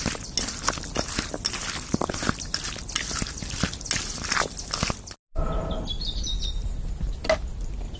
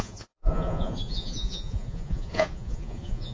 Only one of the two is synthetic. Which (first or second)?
second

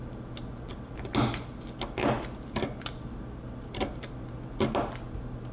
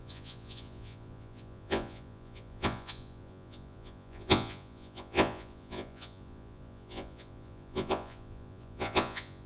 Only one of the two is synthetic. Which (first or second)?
second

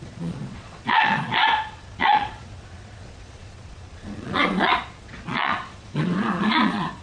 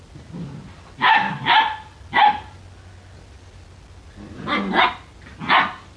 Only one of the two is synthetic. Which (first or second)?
first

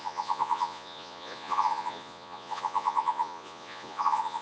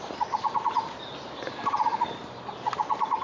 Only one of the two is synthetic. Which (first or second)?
first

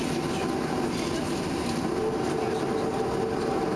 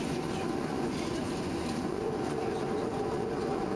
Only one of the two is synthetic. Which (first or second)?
second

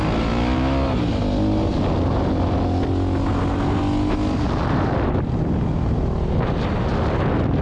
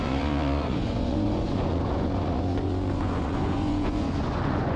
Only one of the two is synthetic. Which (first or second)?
second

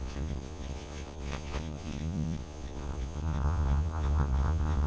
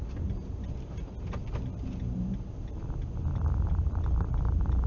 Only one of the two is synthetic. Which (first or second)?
first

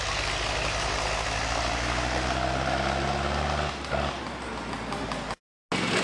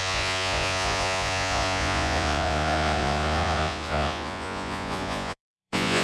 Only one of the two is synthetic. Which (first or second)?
second